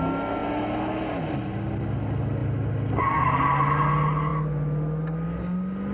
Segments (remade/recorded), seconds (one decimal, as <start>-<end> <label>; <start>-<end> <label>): 0.0-5.9 recorded